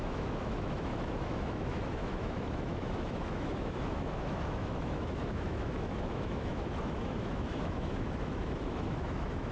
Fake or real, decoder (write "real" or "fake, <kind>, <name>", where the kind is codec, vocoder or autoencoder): fake, autoencoder, DAC-VAE